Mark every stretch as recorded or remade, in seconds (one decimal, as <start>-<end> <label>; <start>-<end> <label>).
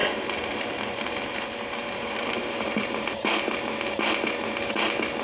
0.0-3.1 remade; 3.1-5.2 recorded